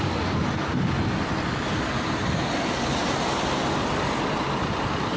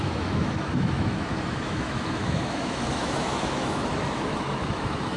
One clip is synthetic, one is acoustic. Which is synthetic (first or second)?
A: second